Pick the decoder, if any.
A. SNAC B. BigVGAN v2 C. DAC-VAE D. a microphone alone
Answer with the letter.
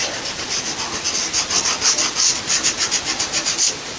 D